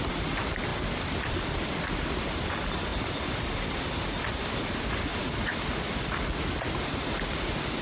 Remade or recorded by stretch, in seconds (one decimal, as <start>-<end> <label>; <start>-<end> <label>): 0.0-0.7 recorded; 0.7-2.0 remade; 2.0-2.9 recorded; 2.9-3.8 remade; 3.8-7.8 recorded